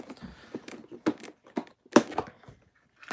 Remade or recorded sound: recorded